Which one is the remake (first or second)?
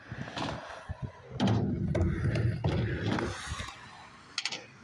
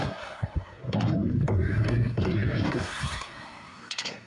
second